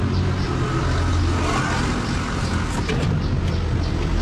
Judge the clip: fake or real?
real